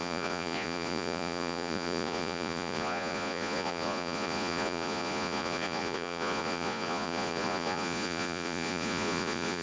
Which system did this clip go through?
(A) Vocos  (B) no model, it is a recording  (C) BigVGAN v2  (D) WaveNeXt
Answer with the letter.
A